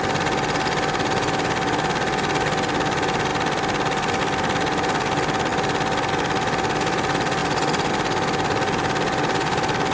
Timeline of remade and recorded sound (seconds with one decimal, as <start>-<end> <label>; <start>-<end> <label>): 0.0-9.9 recorded